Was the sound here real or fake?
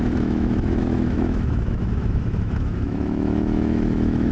fake